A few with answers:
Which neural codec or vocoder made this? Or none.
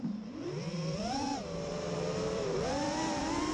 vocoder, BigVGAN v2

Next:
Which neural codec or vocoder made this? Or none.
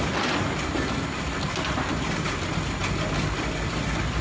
none